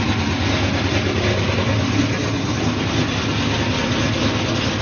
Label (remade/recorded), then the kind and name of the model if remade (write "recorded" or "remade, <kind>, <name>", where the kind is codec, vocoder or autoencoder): recorded